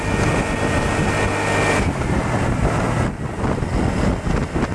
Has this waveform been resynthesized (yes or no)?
no